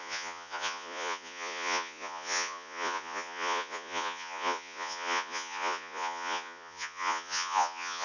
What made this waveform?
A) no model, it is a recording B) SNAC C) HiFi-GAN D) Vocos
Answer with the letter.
D